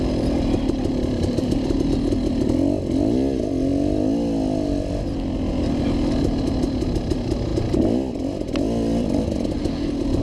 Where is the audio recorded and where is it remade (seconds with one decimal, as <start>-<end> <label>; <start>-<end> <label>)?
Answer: 0.0-10.2 recorded